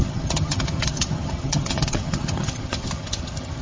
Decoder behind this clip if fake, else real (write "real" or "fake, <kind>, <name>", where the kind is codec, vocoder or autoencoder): fake, vocoder, HiFi-GAN